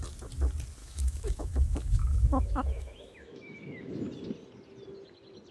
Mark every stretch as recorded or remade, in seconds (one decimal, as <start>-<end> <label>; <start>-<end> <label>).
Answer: 0.0-0.8 recorded; 0.8-4.1 remade; 4.1-5.5 recorded